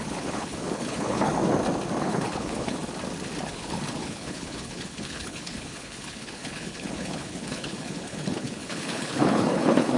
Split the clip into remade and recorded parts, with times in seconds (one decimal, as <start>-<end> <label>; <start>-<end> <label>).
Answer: 0.0-1.3 remade; 1.3-2.0 recorded; 2.0-2.8 remade; 2.8-3.5 recorded; 3.5-10.0 remade